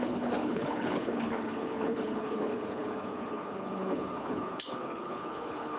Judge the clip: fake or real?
fake